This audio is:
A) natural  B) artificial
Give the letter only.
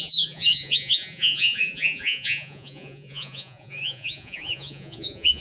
B